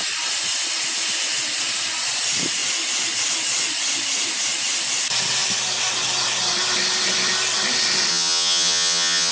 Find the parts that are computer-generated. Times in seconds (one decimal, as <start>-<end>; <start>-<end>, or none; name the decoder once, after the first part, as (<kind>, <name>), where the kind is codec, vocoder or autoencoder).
8.1-9.3 (vocoder, HiFi-GAN)